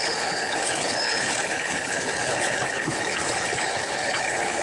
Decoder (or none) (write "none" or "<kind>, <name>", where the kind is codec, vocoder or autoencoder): codec, HILCodec